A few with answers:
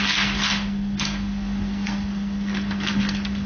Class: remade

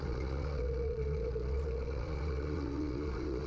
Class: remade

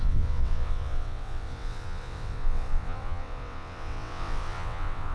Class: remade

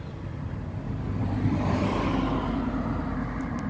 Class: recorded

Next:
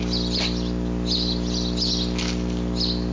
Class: recorded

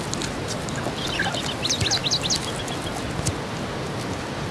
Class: recorded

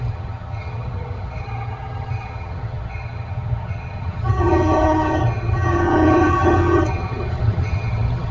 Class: remade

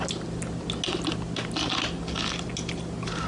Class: recorded